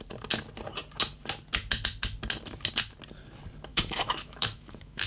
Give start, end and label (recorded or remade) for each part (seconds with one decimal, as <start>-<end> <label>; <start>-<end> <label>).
0.0-3.7 recorded; 3.7-5.1 remade